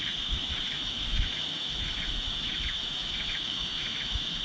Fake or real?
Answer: fake